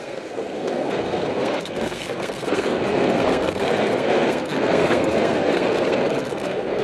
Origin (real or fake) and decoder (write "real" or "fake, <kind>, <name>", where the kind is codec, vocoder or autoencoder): fake, codec, SNAC